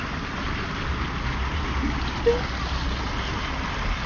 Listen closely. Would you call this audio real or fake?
real